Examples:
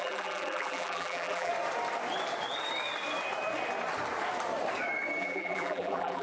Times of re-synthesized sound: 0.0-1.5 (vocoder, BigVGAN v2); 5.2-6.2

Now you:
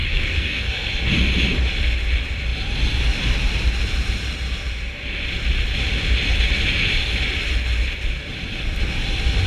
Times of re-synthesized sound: 0.0-0.9 (codec, SNAC)

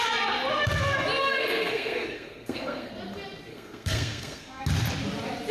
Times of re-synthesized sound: 1.2-2.9 (codec, SNAC); 3.5-4.6

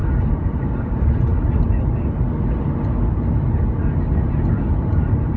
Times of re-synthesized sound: 0.0-1.3 (vocoder, BigVGAN v2); 4.5-5.4